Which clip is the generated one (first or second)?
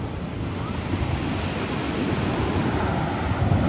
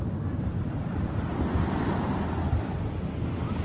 second